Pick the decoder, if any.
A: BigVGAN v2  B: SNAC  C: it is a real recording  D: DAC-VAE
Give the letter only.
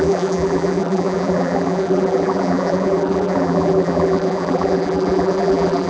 A